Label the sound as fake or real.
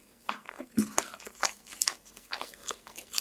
fake